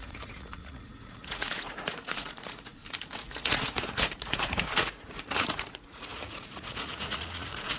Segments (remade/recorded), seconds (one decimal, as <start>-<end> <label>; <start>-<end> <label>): 0.0-2.7 remade; 2.7-3.2 recorded; 3.2-7.8 remade